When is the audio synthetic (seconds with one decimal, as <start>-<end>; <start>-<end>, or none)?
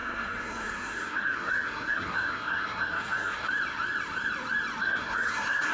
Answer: 0.0-3.5; 4.8-5.7